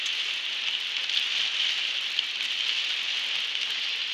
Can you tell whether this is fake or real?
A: real